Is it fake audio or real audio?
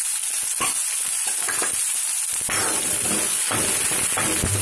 real